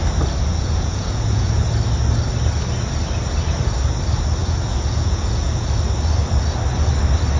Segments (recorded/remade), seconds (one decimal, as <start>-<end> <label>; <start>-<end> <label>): 0.0-0.5 recorded; 0.5-1.5 remade; 1.5-4.4 recorded; 4.4-5.7 remade; 5.7-7.4 recorded